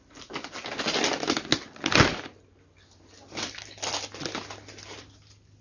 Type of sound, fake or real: real